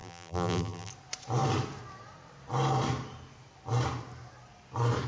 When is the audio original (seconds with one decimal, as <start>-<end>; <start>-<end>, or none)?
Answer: 0.9-5.1